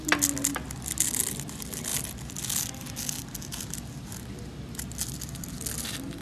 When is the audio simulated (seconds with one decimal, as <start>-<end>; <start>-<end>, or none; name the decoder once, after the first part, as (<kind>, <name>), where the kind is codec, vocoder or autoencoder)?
none